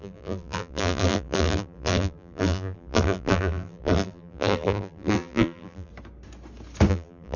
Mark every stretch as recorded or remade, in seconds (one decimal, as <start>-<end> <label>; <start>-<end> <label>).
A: 0.0-5.9 remade; 5.9-6.9 recorded; 6.9-7.4 remade